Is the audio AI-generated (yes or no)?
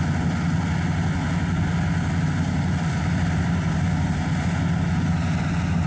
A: no